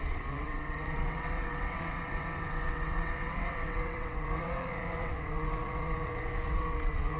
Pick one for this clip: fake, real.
fake